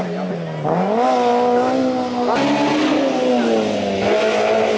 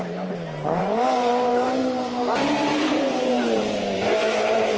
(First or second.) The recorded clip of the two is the first